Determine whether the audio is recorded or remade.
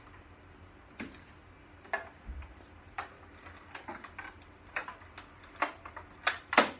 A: recorded